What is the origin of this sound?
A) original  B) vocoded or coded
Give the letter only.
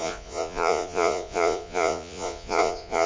B